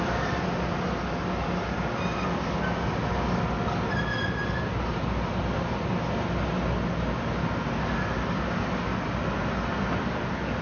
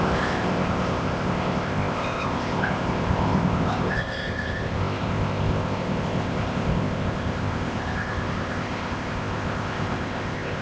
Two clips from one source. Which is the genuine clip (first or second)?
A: first